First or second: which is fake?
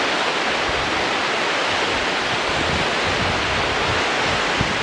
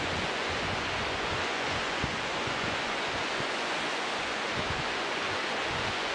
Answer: second